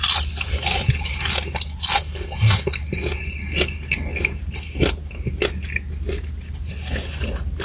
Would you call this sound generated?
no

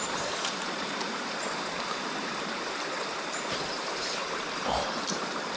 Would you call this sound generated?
yes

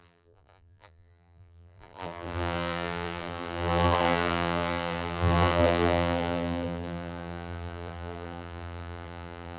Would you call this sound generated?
yes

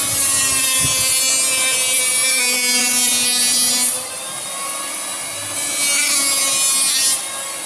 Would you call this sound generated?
no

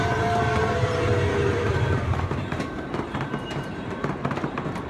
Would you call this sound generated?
yes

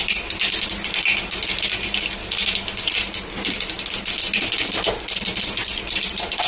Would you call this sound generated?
yes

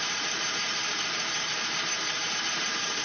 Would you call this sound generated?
yes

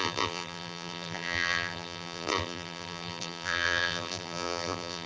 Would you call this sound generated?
yes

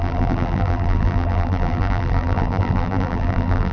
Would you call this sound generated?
yes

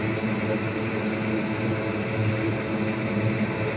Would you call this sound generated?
no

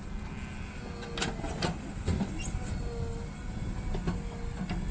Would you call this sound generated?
no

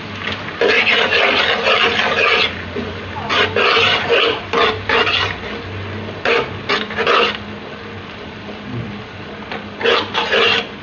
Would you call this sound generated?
no